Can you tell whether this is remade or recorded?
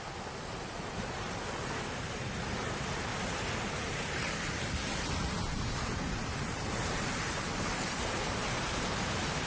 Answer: remade